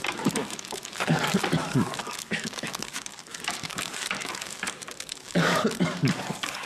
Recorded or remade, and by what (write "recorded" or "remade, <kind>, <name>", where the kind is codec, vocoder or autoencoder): remade, codec, DAC